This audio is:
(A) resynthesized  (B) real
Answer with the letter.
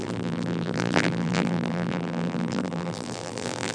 A